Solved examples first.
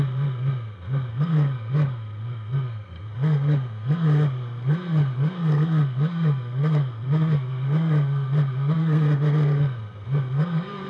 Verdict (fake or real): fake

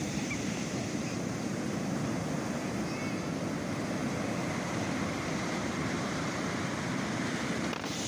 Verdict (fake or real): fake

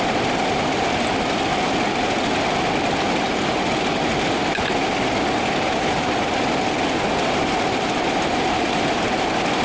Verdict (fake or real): real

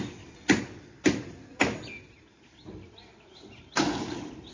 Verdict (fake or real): real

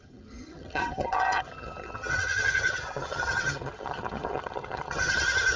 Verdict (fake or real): fake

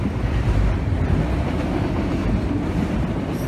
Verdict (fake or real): real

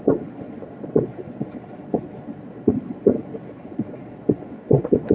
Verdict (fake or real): fake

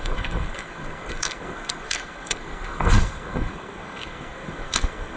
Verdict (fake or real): fake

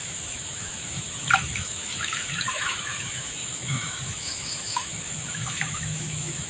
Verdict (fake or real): fake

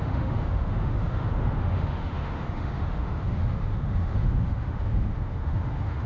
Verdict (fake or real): fake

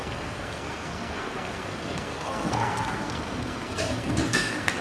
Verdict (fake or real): fake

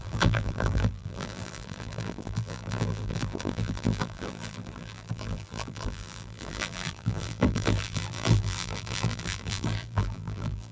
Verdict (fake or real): fake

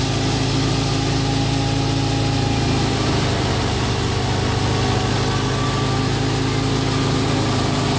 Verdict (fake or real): real